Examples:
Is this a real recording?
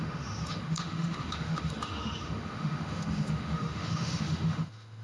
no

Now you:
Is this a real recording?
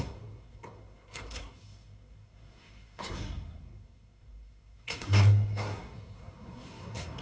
no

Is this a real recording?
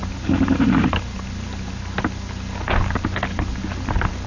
yes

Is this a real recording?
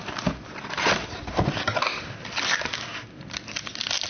yes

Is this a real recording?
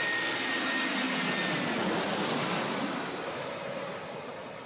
yes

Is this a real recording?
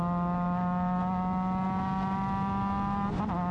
yes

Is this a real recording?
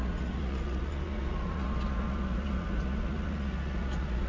no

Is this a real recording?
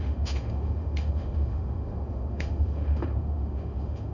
no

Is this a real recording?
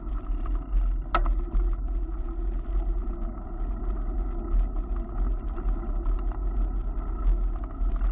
yes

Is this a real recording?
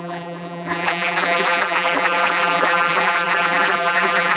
no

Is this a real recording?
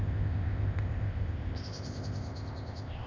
no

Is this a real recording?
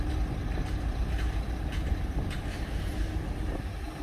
no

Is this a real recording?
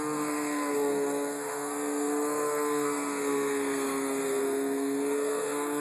no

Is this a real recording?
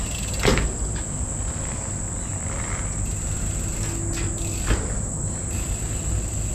yes